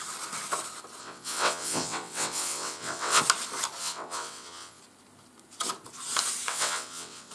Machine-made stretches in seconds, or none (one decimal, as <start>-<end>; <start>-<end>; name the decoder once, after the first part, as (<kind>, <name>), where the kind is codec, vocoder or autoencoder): 1.0-3.2 (vocoder, WaveNeXt); 3.8-4.8; 6.5-7.3